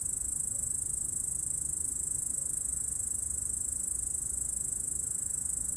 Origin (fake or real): real